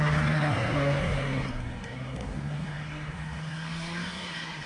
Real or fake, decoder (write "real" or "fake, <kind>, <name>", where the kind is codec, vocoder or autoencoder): fake, codec, SNAC